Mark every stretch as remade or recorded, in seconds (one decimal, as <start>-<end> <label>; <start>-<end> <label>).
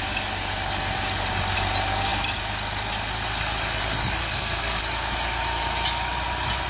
0.0-4.2 recorded; 4.2-4.8 remade; 4.8-6.7 recorded